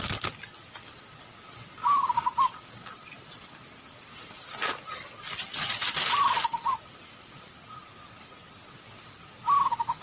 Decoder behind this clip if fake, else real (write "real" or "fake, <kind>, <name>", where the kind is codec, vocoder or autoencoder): real